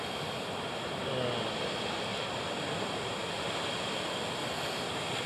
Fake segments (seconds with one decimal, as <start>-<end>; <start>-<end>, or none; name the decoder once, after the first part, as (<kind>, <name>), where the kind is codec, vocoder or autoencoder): none